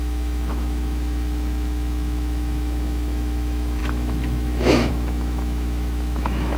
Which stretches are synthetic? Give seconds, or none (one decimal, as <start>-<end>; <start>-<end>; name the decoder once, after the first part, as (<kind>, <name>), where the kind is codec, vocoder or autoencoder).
0.0-6.6 (autoencoder, DAC-VAE)